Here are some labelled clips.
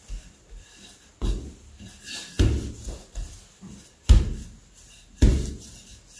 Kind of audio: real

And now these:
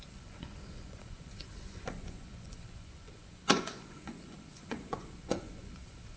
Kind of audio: fake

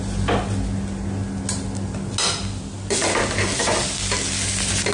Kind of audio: real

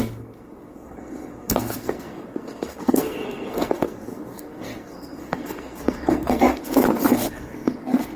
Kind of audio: fake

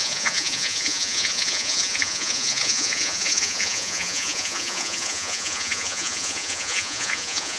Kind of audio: fake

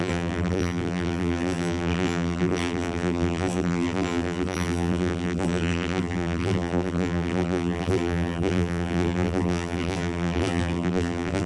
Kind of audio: fake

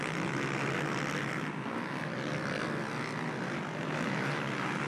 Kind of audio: real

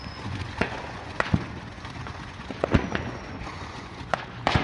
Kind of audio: fake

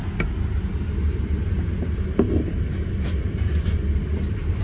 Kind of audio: real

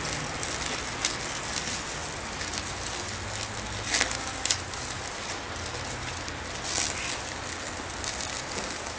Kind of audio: real